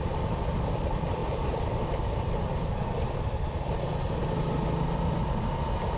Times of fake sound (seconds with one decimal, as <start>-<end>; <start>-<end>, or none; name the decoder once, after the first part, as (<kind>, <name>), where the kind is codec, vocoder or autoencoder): none